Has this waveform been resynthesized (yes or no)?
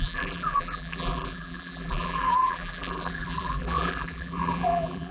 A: yes